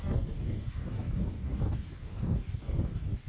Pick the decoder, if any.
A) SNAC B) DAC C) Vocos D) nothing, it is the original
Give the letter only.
B